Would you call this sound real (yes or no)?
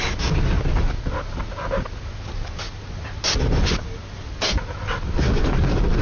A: yes